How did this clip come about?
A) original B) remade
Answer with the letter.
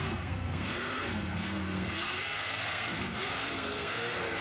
B